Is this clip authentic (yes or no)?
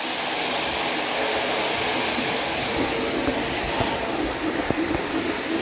yes